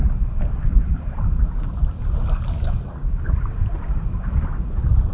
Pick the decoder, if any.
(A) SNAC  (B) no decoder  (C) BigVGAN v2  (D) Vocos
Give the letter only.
B